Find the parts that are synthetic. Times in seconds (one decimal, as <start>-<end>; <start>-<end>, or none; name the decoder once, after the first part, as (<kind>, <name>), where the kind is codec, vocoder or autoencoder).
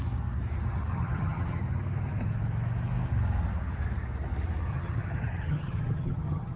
0.9-1.6 (vocoder, HiFi-GAN); 4.7-6.6